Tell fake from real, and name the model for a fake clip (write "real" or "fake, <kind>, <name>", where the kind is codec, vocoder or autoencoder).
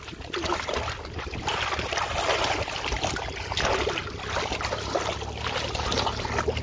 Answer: real